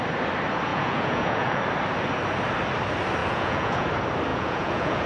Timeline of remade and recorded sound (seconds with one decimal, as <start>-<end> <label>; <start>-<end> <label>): 0.0-0.7 recorded; 0.7-1.6 remade; 1.6-3.2 recorded; 3.2-3.9 remade; 3.9-4.3 recorded; 4.3-5.1 remade